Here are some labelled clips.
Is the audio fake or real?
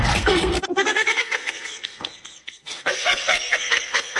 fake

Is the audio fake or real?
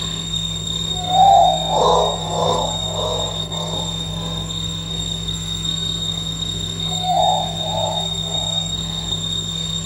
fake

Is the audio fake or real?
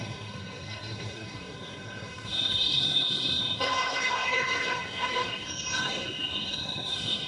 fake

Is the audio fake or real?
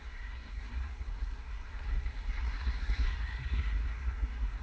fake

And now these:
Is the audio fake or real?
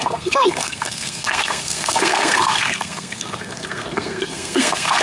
fake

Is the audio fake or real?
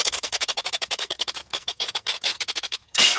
fake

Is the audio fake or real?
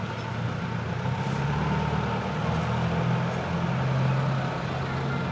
real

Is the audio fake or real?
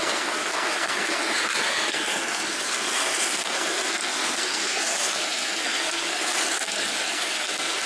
fake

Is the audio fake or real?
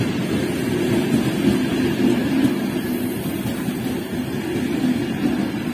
real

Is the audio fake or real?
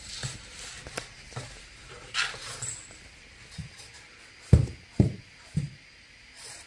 real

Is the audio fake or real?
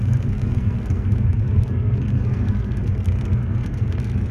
fake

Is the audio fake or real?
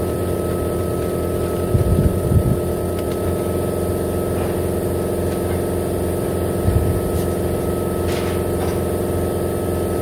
real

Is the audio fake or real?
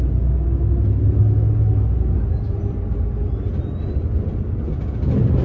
real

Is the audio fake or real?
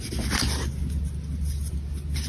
real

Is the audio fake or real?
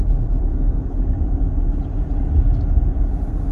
real